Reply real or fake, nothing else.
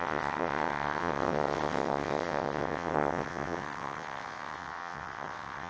fake